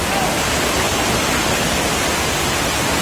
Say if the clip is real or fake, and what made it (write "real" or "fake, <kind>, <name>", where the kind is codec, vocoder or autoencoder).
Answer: real